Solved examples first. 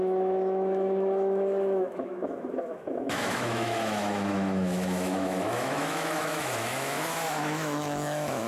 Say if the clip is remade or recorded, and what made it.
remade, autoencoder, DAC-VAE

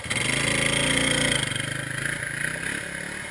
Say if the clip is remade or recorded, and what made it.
recorded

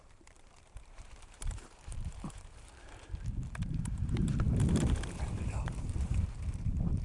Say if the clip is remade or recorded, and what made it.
remade, vocoder, BigVGAN v2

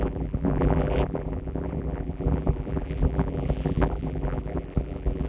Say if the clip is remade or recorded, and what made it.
remade, vocoder, BigVGAN v2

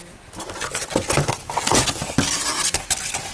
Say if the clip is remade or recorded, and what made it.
recorded